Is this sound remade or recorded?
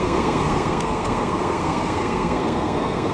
remade